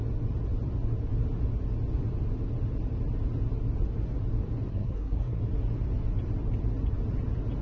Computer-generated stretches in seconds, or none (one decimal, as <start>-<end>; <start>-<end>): 4.7-5.4